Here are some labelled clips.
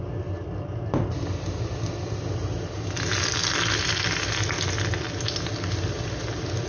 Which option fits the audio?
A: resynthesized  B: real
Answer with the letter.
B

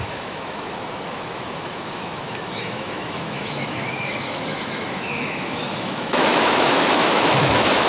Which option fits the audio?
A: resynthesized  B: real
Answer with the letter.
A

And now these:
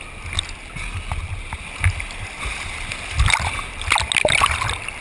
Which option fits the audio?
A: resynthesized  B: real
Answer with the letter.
B